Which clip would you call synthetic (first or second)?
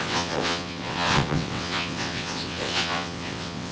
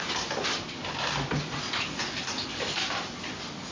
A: first